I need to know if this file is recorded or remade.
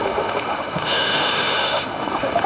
remade